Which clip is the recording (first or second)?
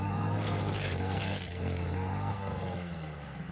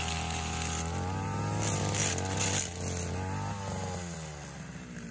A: second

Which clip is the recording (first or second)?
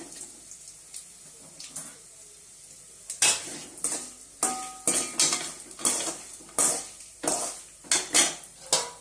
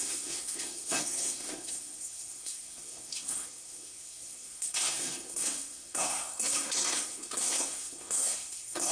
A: first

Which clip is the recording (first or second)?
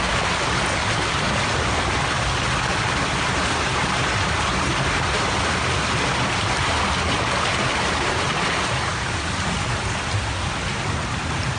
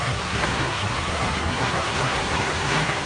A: first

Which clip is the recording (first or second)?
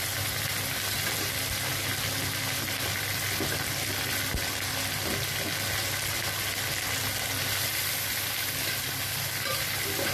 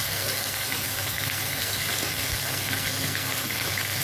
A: first